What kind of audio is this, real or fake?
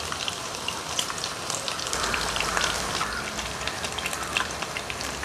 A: fake